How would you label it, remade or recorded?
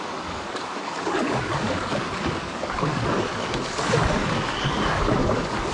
remade